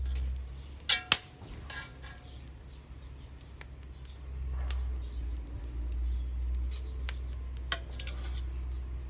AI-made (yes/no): no